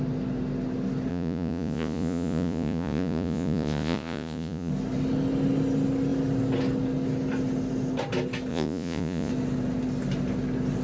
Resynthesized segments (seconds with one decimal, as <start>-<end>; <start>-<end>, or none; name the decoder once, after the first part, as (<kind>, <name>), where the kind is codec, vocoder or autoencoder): 1.1-4.7 (vocoder, Vocos); 8.5-9.3